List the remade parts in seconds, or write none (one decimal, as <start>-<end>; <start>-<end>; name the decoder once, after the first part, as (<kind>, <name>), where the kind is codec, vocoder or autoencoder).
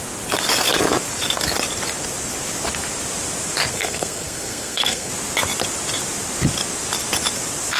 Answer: 3.7-5.1 (codec, SNAC)